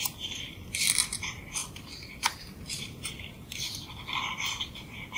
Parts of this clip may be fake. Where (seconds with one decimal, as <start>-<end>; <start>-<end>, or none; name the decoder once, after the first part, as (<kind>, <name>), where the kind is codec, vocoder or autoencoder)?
1.6-3.1 (vocoder, BigVGAN v2)